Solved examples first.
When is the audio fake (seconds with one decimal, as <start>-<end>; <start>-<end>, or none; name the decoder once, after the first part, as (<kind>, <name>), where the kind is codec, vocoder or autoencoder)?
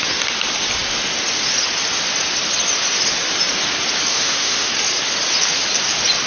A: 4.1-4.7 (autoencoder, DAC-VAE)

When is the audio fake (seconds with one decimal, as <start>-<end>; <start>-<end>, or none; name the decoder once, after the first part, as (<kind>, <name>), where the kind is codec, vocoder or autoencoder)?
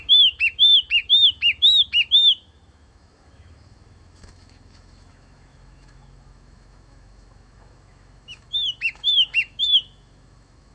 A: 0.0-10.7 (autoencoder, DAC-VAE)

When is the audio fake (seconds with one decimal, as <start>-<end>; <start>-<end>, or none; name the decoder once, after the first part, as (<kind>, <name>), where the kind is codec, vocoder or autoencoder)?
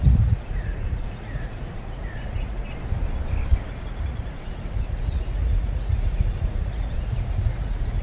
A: 0.0-2.7 (vocoder, Vocos); 3.7-8.0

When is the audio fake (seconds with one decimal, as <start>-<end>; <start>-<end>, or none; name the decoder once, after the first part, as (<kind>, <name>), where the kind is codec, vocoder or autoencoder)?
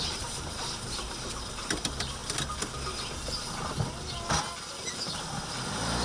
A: 0.0-2.2 (vocoder, BigVGAN v2); 4.6-6.0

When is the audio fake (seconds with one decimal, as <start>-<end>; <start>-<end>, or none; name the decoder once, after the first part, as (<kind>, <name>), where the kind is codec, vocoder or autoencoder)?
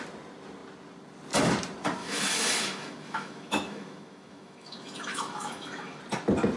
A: 2.0-6.0 (autoencoder, DAC-VAE)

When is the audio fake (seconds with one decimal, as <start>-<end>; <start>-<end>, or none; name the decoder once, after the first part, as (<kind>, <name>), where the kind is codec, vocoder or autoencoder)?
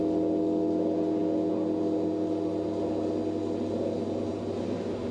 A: none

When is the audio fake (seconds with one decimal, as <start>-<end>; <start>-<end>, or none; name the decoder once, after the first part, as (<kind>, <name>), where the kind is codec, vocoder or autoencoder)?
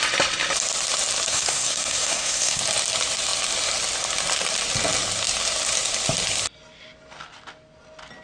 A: 1.3-2.6 (codec, SNAC)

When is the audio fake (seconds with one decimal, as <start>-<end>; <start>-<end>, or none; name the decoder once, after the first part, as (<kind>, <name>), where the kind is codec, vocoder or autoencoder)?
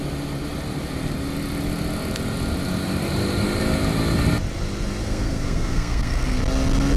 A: 5.0-6.4 (codec, SNAC)